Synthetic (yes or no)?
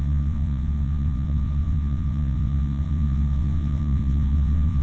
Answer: yes